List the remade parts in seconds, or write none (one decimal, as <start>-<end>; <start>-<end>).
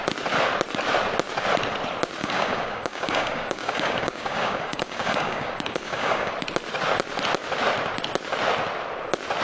2.2-6.3